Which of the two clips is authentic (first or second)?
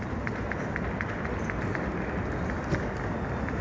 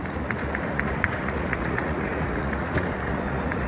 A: first